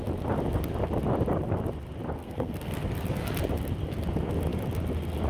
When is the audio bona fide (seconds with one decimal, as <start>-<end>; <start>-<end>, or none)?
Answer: 0.0-2.2; 2.7-5.3